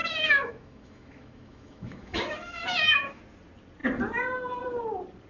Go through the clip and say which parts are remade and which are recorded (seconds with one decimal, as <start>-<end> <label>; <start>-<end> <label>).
0.0-3.2 remade; 3.2-5.3 recorded